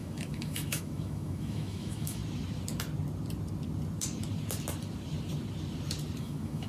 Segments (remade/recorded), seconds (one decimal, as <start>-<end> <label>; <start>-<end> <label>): 0.0-2.2 remade; 2.2-6.2 recorded; 6.2-6.7 remade